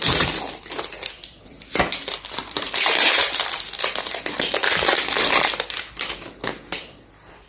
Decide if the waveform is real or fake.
fake